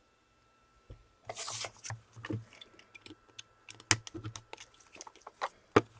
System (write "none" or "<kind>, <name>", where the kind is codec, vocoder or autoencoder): none